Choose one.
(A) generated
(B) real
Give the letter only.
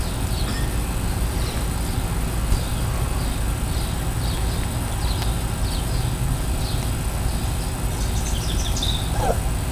B